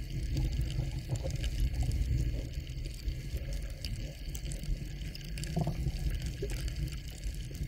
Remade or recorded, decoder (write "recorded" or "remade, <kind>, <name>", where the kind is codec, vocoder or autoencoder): recorded